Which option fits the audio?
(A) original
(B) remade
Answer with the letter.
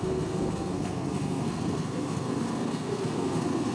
B